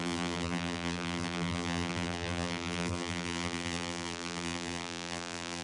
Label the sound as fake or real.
fake